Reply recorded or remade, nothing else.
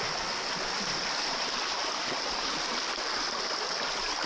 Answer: recorded